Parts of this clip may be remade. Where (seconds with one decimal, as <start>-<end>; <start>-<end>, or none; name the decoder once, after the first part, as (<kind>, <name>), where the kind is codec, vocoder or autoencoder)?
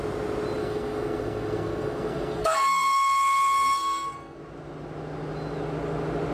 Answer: 0.6-4.4 (codec, SNAC)